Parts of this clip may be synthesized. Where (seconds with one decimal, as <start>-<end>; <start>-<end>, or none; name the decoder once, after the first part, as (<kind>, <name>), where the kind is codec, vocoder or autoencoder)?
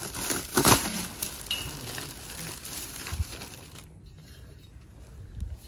0.5-1.0 (vocoder, BigVGAN v2); 2.6-3.8; 4.2-5.0